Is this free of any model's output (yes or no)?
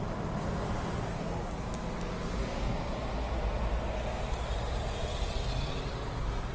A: yes